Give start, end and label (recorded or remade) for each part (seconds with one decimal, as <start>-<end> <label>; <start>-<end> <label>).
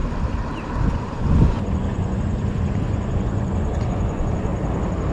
0.0-0.9 recorded; 0.9-4.5 remade; 4.5-5.1 recorded